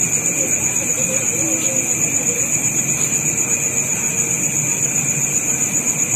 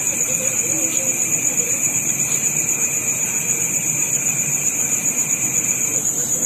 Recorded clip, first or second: first